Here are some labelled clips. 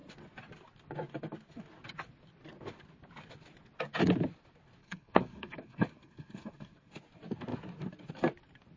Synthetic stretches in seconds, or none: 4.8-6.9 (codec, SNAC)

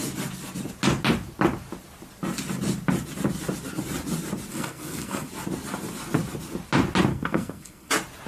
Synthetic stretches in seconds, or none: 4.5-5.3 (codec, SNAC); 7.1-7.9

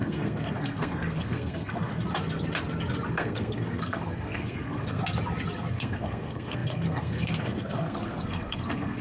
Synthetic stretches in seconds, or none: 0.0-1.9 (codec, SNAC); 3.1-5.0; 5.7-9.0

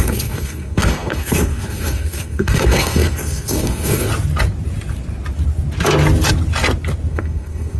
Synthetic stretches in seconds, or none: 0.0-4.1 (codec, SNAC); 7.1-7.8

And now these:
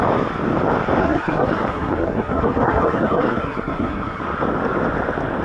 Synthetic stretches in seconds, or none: 1.0-4.2 (codec, SNAC)